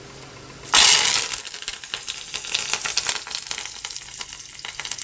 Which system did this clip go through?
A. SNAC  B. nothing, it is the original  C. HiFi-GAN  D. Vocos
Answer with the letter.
B